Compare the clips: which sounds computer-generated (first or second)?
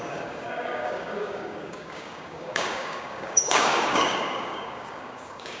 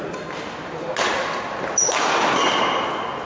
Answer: first